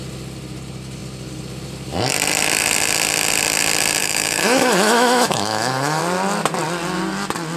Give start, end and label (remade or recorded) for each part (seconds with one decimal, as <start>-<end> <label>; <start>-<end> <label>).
0.0-4.0 recorded; 4.0-6.0 remade; 6.0-7.6 recorded